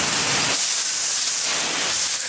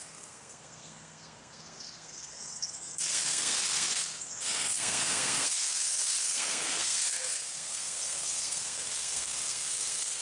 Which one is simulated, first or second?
second